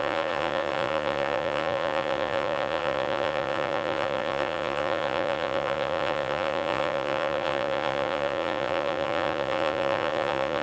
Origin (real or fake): fake